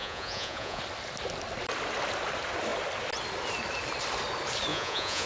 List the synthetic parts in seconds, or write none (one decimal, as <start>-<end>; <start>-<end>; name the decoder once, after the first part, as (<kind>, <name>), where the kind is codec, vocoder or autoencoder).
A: 0.0-0.8 (vocoder, Vocos); 4.7-5.3